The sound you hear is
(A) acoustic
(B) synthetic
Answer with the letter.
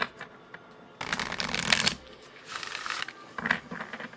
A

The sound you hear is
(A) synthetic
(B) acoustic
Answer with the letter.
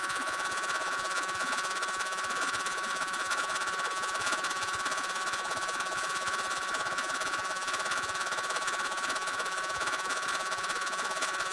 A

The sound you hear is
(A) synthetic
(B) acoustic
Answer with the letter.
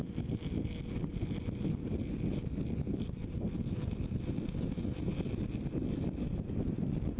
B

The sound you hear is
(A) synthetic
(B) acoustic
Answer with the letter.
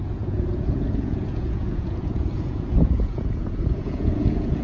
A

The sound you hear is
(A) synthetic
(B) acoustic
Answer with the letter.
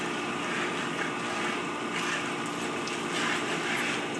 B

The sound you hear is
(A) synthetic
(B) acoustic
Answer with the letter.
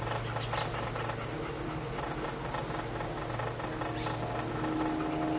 B